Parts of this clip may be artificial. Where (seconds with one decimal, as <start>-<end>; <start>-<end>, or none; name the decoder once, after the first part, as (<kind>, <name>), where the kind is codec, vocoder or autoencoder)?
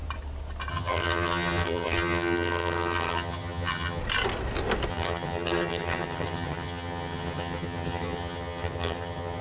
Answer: 0.7-4.0 (vocoder, HiFi-GAN); 4.9-9.4